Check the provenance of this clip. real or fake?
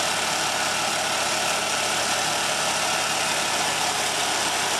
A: real